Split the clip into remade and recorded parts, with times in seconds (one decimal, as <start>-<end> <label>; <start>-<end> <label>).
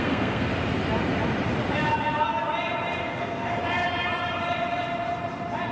0.0-0.5 remade; 0.5-3.0 recorded; 3.0-3.5 remade; 3.5-5.7 recorded